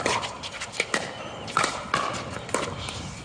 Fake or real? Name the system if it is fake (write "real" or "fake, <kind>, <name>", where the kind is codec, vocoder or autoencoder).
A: real